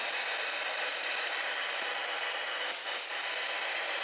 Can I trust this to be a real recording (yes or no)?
yes